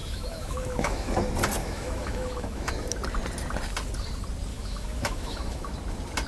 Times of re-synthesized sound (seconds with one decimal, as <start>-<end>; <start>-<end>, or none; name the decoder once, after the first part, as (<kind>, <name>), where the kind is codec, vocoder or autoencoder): 0.0-1.1 (autoencoder, DAC-VAE); 1.6-2.7; 4.5-5.7